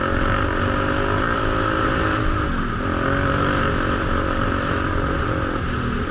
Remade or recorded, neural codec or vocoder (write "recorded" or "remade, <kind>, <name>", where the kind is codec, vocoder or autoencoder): recorded